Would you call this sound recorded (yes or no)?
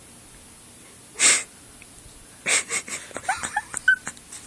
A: yes